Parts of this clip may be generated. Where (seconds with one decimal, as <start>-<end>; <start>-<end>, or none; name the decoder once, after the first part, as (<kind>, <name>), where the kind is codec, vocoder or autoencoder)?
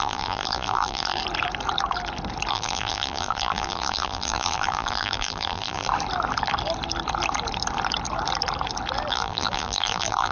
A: 0.0-1.2 (vocoder, BigVGAN v2); 2.5-5.9; 9.1-10.3